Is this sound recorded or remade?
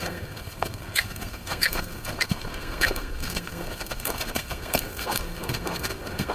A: remade